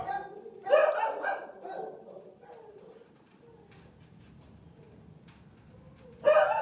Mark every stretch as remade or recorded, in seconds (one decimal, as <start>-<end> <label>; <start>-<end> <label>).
0.0-6.6 recorded